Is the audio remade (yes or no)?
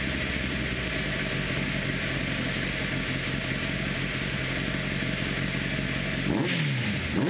no